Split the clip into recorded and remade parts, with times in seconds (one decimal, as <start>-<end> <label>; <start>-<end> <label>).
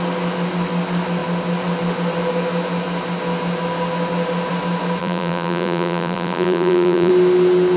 0.0-5.0 recorded; 5.0-7.1 remade; 7.1-7.8 recorded